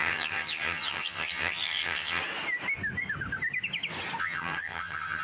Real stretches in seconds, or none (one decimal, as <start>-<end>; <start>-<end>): 2.2-4.2

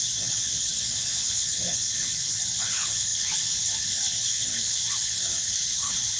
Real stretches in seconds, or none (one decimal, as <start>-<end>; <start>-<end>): none